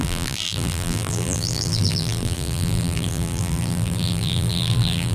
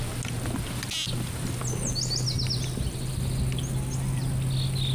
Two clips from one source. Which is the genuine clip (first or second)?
second